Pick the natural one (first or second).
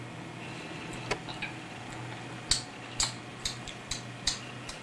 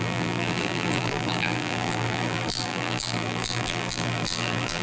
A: first